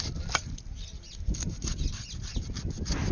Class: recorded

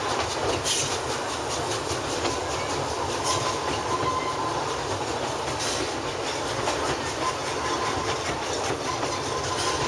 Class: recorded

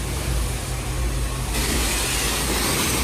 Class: recorded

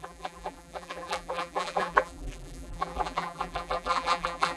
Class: remade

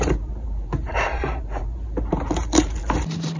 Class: remade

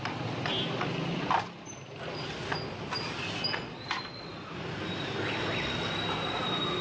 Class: recorded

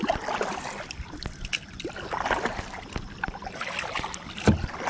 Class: recorded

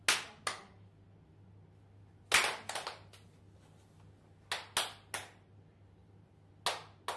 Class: recorded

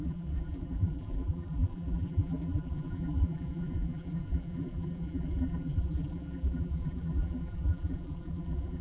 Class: remade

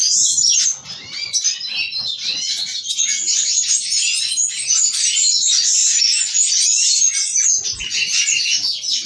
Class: recorded